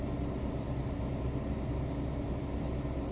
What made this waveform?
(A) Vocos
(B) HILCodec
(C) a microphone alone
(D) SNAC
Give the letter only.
C